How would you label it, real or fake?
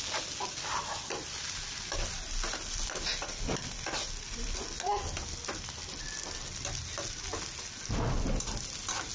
real